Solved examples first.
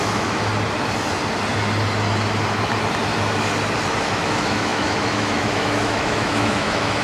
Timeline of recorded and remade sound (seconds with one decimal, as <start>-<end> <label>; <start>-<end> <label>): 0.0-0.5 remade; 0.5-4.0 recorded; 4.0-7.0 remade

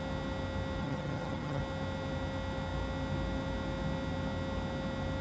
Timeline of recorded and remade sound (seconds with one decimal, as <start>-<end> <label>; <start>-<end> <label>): 0.0-0.8 recorded; 0.8-1.6 remade; 1.6-5.2 recorded

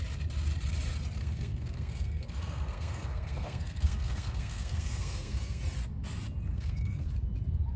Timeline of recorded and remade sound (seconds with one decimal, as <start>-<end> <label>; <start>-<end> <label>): 0.0-1.2 recorded; 1.2-5.6 remade; 5.6-6.5 recorded; 6.5-7.1 remade; 7.1-7.8 recorded

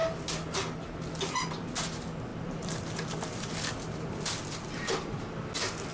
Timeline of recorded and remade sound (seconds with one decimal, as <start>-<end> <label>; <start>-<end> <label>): 0.0-2.3 recorded; 2.3-5.2 remade; 5.2-5.9 recorded

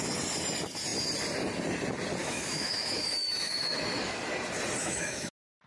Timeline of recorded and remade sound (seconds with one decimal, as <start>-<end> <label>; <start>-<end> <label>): 0.0-2.2 recorded; 2.2-4.2 remade; 4.2-4.8 recorded; 4.8-5.3 remade; 5.3-5.7 recorded

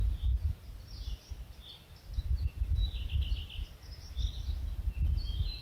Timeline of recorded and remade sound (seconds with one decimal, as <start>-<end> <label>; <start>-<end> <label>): 0.0-5.6 recorded

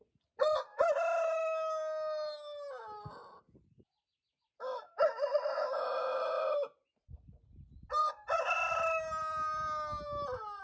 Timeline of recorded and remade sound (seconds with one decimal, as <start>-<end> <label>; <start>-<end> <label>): 0.0-10.6 recorded